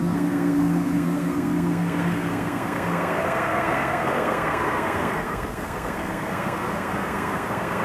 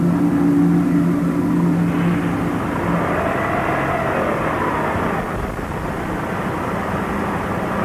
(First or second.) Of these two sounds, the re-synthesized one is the first